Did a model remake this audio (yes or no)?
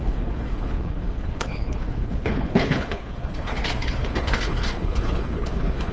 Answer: yes